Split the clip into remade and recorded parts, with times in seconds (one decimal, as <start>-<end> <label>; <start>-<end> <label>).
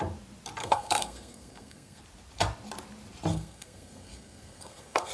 0.0-0.6 recorded; 0.6-2.0 remade; 2.0-3.3 recorded; 3.3-5.1 remade